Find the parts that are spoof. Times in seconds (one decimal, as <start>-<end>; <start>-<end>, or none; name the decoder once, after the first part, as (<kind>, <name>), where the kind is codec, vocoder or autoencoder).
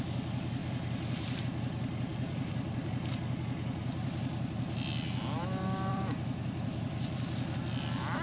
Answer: 0.6-1.4 (vocoder, BigVGAN v2); 2.1-3.4; 3.8-4.6; 5.9-7.6